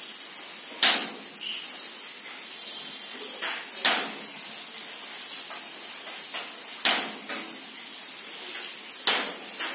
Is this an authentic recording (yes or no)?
yes